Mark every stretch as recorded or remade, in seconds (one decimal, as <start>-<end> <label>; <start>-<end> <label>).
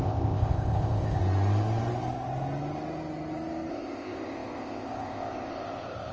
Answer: 0.0-1.2 remade; 1.2-3.7 recorded; 3.7-6.1 remade